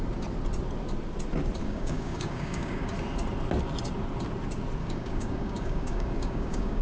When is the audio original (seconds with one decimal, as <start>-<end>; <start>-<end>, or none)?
0.0-1.6; 2.9-4.8